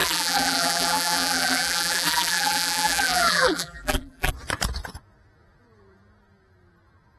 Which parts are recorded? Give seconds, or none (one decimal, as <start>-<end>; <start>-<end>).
4.3-7.2